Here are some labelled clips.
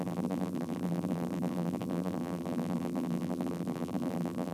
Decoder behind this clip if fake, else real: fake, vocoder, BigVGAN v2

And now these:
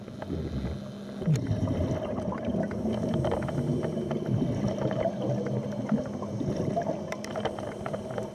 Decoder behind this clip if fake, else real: real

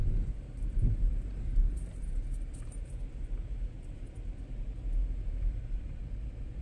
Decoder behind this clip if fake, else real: fake, vocoder, BigVGAN v2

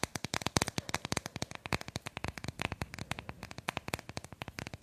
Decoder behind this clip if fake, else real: real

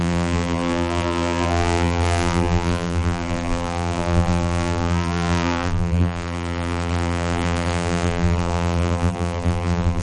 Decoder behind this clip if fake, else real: fake, vocoder, BigVGAN v2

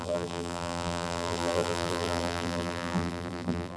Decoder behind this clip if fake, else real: fake, vocoder, BigVGAN v2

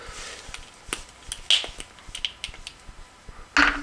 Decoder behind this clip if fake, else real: real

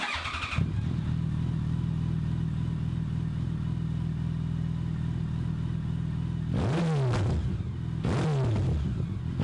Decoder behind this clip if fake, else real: real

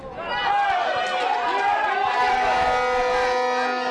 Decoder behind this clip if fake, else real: real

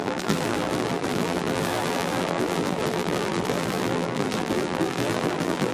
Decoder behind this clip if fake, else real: fake, vocoder, BigVGAN v2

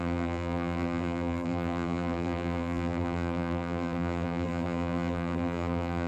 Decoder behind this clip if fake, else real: fake, vocoder, BigVGAN v2